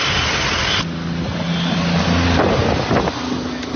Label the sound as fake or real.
real